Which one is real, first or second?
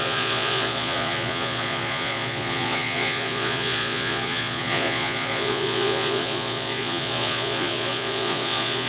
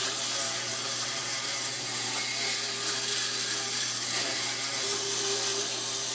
second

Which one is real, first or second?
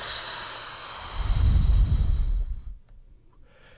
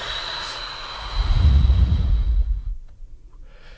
first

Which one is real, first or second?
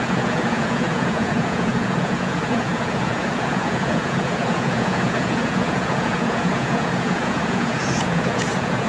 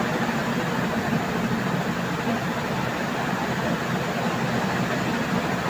second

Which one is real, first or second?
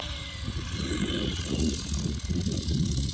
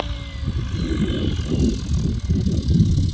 second